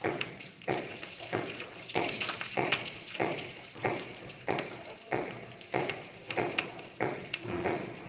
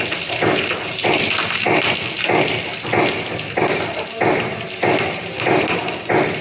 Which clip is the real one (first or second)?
second